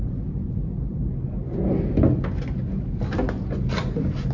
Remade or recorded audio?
recorded